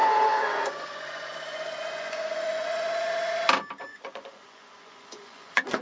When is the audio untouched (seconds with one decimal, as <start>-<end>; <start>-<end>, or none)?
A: 2.7-3.9